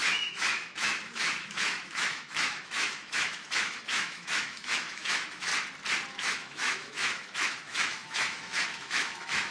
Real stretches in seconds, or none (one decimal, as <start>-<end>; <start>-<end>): 5.5-6.1